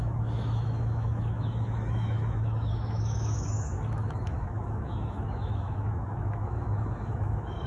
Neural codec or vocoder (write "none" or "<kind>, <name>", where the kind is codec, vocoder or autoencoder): autoencoder, DAC-VAE